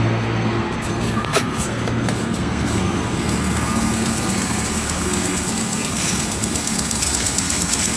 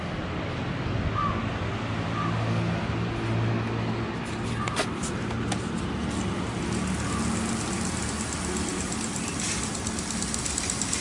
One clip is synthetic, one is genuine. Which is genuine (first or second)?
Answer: second